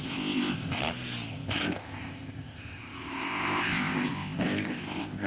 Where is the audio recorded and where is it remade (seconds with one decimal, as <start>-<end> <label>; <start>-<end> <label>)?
0.0-0.8 remade; 0.8-1.3 recorded; 1.3-5.3 remade